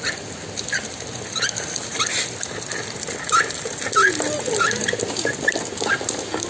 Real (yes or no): yes